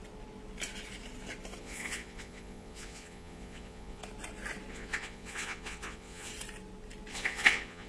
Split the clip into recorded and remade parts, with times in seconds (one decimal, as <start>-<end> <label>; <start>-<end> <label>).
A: 0.0-1.6 recorded; 1.6-4.0 remade; 4.0-4.7 recorded; 4.7-6.3 remade; 6.3-7.1 recorded; 7.1-7.9 remade